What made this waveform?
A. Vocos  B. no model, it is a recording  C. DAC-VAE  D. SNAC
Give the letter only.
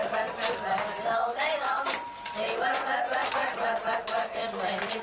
B